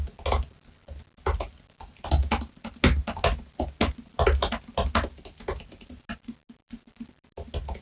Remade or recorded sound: recorded